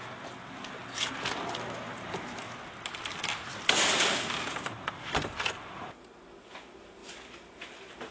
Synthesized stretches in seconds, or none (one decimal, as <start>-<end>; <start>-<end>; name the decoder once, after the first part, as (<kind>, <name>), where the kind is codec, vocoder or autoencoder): none